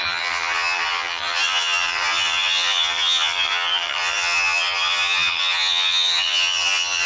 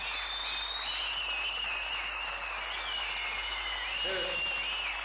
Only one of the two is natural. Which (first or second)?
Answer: second